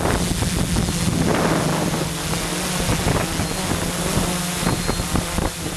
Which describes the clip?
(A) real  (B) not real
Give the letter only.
A